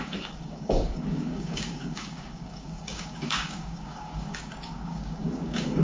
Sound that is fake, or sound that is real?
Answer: fake